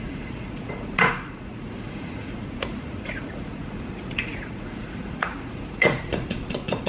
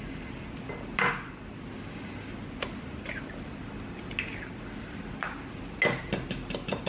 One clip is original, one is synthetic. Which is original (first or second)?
second